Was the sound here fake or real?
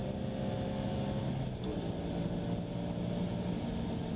real